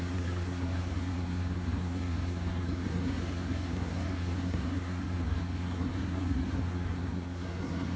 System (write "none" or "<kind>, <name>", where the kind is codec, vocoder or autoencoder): codec, SNAC